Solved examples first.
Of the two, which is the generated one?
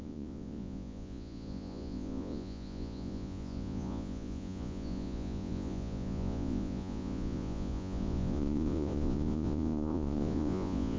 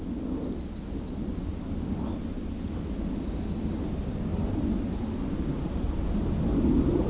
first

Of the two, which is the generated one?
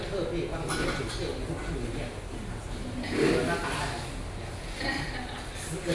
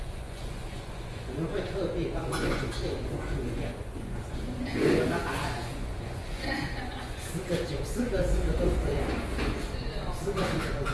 second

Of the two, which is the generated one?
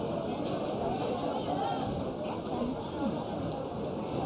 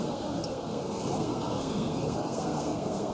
second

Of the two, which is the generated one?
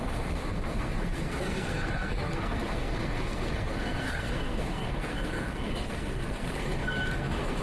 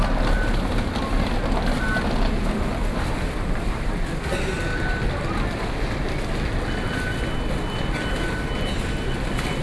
first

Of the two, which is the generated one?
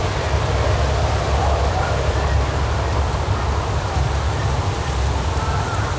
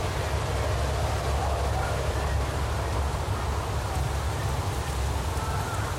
first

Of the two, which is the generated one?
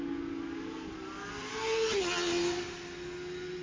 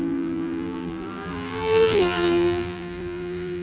second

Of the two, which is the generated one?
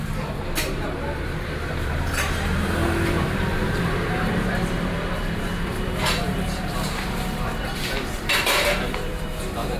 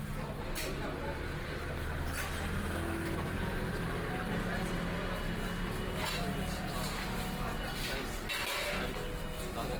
first